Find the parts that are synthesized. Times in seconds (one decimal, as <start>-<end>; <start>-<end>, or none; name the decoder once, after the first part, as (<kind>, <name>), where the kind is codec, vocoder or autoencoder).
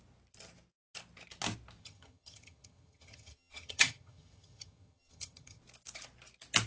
1.8-5.6 (vocoder, HiFi-GAN)